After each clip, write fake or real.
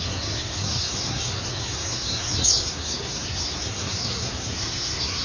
fake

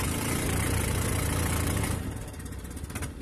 real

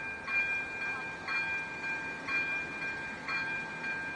real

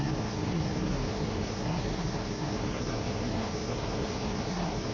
fake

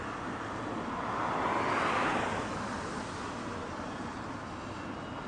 real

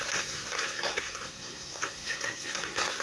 fake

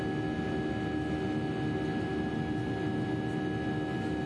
real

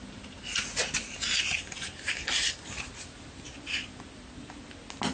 real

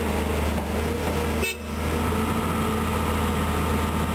real